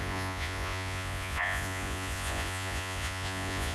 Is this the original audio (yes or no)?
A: no